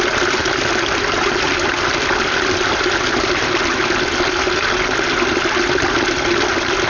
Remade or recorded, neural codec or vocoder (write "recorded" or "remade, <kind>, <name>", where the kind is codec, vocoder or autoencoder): recorded